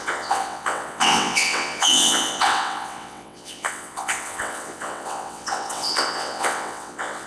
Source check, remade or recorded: remade